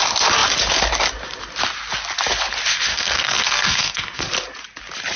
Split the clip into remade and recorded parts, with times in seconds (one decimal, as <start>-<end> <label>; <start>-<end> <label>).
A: 0.0-2.9 recorded; 2.9-4.2 remade; 4.2-5.2 recorded